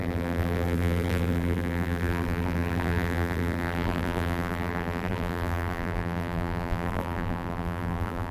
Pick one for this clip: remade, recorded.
remade